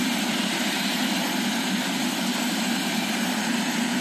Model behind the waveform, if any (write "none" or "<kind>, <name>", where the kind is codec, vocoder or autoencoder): none